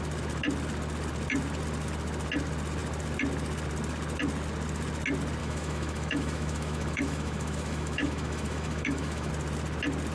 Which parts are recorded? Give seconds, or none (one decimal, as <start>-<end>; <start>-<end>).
0.0-5.4; 9.3-10.1